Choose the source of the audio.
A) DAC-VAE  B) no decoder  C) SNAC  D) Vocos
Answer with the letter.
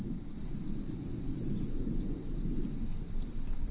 B